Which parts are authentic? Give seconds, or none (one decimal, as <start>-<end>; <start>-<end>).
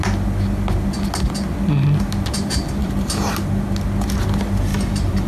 0.0-2.8; 3.5-4.7